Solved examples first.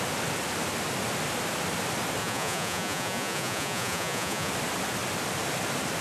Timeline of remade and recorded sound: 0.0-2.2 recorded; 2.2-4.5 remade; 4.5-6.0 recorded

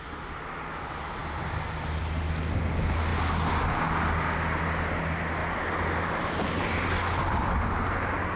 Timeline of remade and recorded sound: 0.0-8.4 recorded

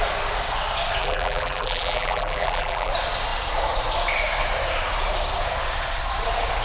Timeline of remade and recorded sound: 0.0-1.0 recorded; 1.0-2.9 remade; 2.9-6.6 recorded

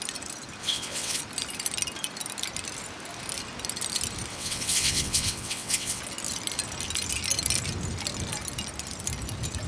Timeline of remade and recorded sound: 0.0-0.6 recorded; 0.6-1.2 remade; 1.2-4.3 recorded; 4.3-6.0 remade; 6.0-9.7 recorded

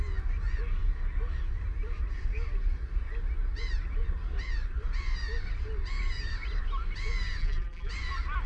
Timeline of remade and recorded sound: 0.0-7.4 recorded; 7.4-7.9 remade; 7.9-8.5 recorded

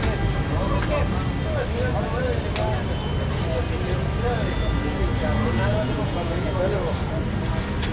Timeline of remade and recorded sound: 0.0-5.7 recorded; 5.7-6.5 remade; 6.5-7.9 recorded

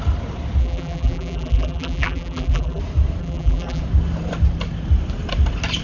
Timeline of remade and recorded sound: 0.0-0.6 recorded; 0.6-2.8 remade; 2.8-3.2 recorded; 3.2-3.8 remade; 3.8-5.8 recorded